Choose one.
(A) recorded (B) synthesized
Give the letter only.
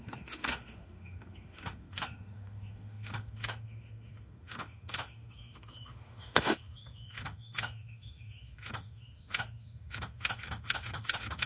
B